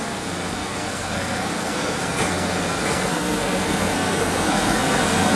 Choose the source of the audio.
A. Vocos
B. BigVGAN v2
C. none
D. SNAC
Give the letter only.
D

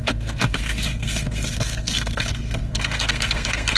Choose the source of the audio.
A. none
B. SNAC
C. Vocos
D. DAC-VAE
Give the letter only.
B